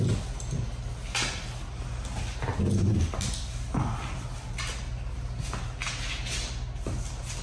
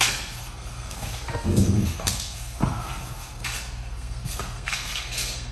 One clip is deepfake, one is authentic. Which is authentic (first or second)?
first